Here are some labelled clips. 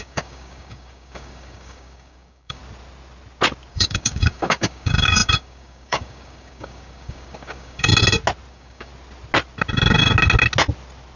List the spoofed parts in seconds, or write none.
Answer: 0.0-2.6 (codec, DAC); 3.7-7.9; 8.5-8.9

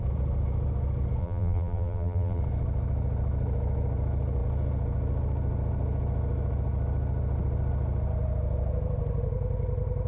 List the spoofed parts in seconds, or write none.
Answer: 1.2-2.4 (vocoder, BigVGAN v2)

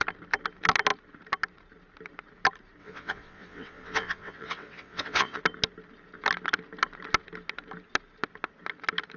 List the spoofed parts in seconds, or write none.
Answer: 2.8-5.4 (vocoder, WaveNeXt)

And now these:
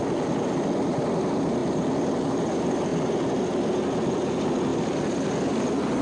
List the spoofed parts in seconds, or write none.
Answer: none

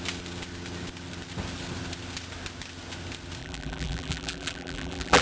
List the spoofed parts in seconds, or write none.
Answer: 3.4-5.2 (vocoder, BigVGAN v2)